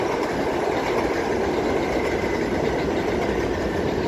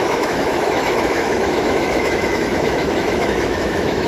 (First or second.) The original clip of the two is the first